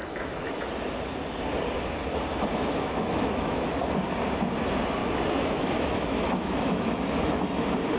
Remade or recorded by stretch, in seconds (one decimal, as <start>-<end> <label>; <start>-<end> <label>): 0.0-0.7 remade; 0.7-2.3 recorded; 2.3-3.7 remade; 3.7-5.0 recorded; 5.0-7.6 remade; 7.6-8.0 recorded